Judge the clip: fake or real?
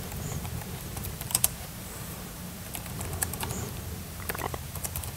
fake